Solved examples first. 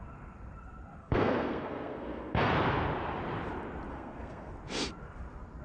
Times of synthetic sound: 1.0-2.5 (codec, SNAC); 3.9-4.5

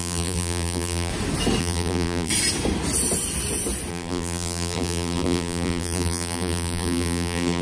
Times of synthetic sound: 0.0-1.1 (vocoder, BigVGAN v2); 1.6-2.3; 3.9-7.6

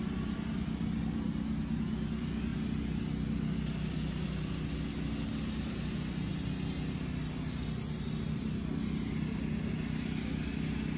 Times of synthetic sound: none

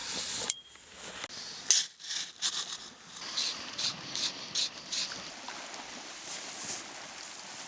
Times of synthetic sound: 0.0-0.9 (vocoder, BigVGAN v2)

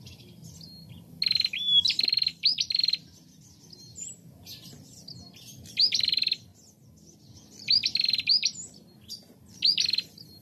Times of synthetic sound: 2.3-3.2 (vocoder, BigVGAN v2)

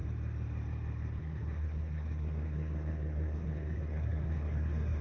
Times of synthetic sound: 1.2-5.0 (codec, SNAC)

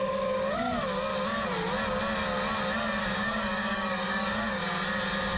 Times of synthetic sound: 0.0-1.1 (codec, DAC); 3.0-4.6

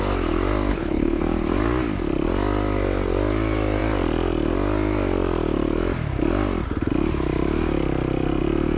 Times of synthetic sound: 0.7-1.2 (codec, HILCodec)